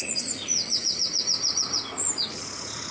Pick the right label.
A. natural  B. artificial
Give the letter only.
B